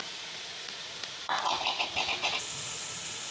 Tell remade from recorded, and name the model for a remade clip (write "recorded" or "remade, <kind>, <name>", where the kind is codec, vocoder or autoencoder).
remade, vocoder, Vocos